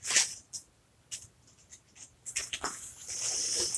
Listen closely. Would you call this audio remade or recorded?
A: recorded